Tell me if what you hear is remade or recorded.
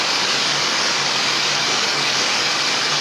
remade